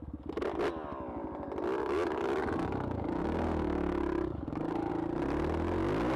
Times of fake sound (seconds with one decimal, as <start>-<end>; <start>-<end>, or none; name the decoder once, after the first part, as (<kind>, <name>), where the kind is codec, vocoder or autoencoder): 1.8-4.9 (codec, DAC)